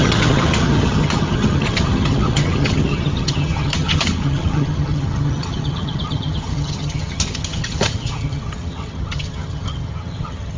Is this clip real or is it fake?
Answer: fake